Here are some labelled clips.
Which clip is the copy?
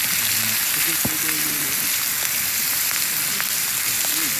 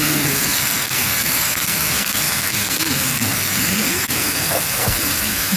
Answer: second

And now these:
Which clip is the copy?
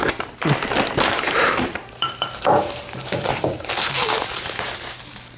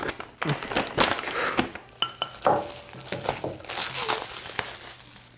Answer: first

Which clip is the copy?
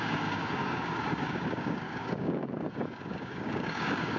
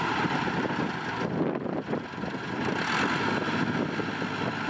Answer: first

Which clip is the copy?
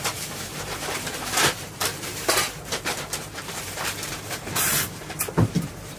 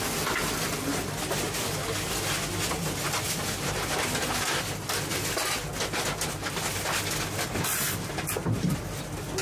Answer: first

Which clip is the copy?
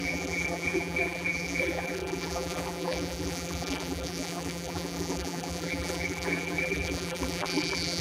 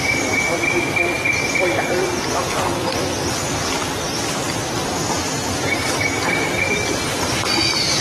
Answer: first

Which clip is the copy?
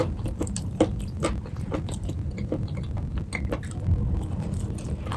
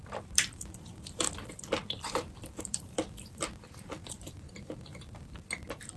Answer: second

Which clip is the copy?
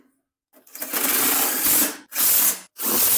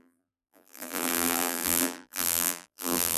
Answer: second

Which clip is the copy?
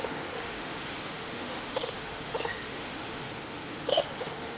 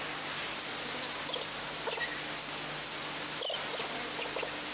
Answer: first